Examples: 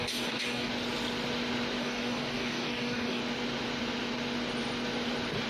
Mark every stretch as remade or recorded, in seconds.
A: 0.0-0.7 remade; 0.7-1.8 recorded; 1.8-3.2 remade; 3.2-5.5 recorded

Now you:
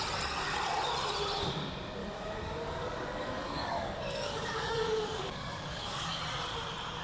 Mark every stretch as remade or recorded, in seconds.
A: 0.0-2.0 recorded; 2.0-6.2 remade; 6.2-7.0 recorded

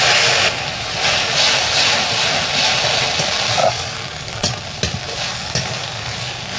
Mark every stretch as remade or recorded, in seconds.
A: 0.0-3.6 recorded; 3.6-4.5 remade; 4.5-5.3 recorded; 5.3-6.6 remade

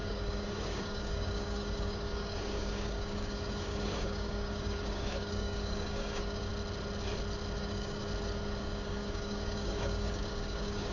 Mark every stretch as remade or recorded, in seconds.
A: 0.0-6.5 remade; 6.5-7.6 recorded; 7.6-8.0 remade; 8.0-8.6 recorded; 8.6-10.9 remade

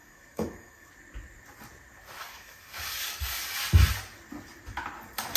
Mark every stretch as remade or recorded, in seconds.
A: 0.0-0.9 remade; 0.9-2.2 recorded; 2.2-3.6 remade; 3.6-5.4 recorded

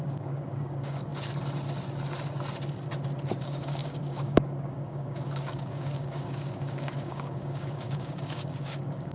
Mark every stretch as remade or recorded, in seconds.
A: 0.0-1.1 remade; 1.1-3.4 recorded; 3.4-9.1 remade

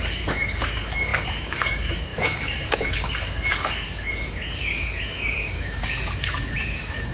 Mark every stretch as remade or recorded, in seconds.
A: 0.0-7.1 remade

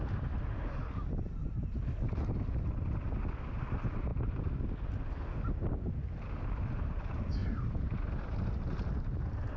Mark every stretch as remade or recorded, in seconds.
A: 0.0-9.6 recorded